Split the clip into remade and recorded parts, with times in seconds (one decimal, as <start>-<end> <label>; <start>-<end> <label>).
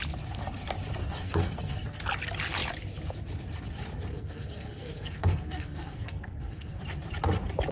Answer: 0.0-1.0 recorded; 1.0-2.0 remade; 2.0-4.1 recorded; 4.1-6.8 remade; 6.8-7.7 recorded